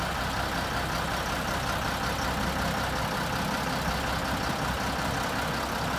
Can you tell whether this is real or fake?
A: real